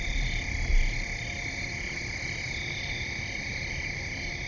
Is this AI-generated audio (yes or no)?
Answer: no